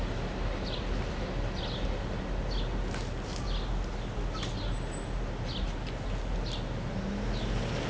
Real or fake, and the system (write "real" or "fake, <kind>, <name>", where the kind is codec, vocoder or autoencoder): real